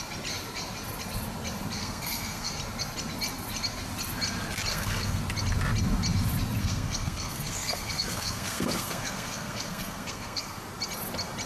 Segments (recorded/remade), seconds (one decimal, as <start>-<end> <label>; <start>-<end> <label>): 0.0-1.8 recorded; 1.8-2.5 remade; 2.5-4.7 recorded; 4.7-5.2 remade; 5.2-6.6 recorded; 6.6-10.6 remade; 10.6-11.5 recorded